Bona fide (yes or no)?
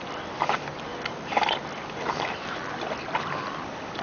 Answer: yes